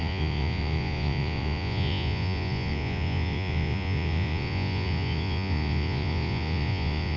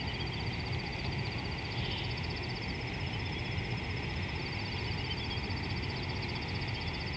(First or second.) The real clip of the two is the second